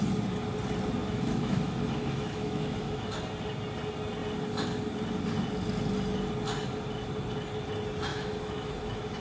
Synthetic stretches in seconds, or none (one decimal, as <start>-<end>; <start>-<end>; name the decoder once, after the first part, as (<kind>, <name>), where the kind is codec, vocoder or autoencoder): 1.0-3.2 (autoencoder, DAC-VAE); 8.1-9.2